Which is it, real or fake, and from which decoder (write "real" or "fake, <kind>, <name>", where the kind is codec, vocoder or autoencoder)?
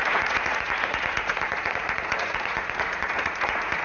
fake, vocoder, Vocos